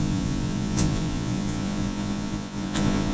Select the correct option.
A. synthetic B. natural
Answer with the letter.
A